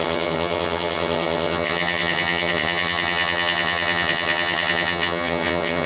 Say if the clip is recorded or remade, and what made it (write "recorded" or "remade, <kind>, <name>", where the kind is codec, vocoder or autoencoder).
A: remade, vocoder, HiFi-GAN